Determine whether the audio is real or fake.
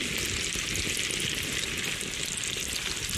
real